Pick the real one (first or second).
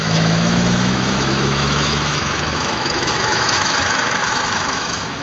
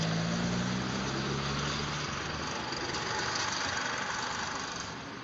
second